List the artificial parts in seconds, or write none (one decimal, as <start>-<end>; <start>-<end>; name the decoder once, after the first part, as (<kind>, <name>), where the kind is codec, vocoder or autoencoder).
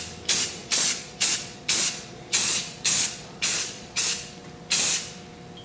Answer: 0.6-4.0 (vocoder, Vocos)